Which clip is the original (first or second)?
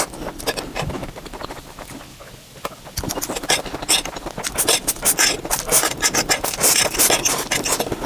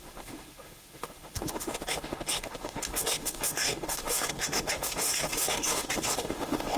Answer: first